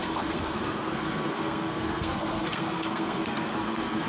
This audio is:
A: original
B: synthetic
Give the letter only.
B